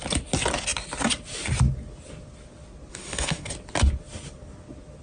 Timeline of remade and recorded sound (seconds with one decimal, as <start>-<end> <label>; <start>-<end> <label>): 0.0-2.9 recorded; 2.9-3.5 remade; 3.5-5.0 recorded